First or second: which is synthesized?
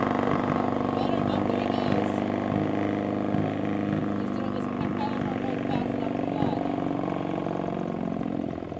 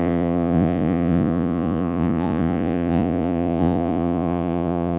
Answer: second